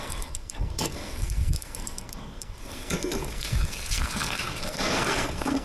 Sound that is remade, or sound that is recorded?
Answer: remade